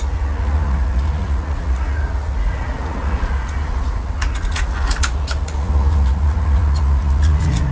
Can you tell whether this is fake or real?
fake